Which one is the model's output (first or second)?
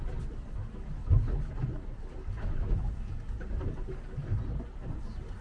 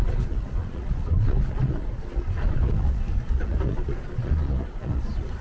second